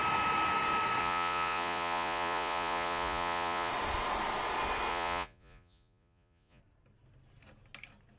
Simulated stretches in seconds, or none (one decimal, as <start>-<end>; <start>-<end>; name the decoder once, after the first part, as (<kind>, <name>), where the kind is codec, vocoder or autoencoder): 1.0-3.7 (vocoder, Vocos); 4.9-6.6